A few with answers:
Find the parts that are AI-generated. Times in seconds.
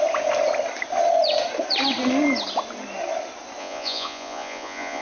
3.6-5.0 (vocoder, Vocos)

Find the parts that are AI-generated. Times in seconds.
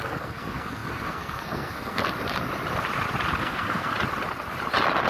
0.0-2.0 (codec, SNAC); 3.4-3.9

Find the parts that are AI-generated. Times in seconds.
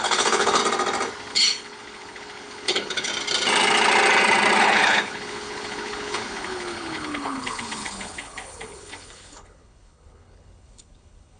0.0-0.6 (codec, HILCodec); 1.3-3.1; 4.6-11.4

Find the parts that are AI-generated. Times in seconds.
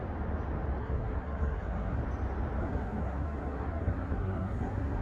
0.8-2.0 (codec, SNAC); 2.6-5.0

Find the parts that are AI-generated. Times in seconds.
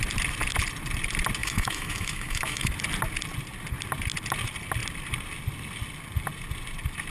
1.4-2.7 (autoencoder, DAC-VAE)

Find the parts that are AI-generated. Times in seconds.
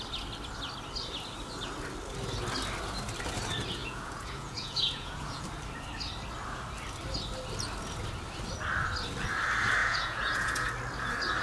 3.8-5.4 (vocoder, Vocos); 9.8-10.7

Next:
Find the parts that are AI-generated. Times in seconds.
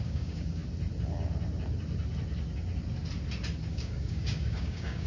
0.0-0.6 (codec, DAC); 3.7-5.1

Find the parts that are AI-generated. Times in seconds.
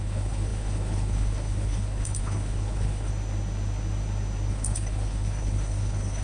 0.0-3.1 (codec, HILCodec); 4.5-6.2